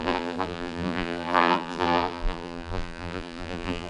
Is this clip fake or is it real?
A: fake